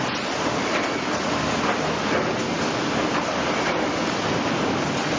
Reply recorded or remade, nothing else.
recorded